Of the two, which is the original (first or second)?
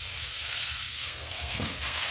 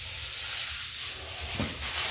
second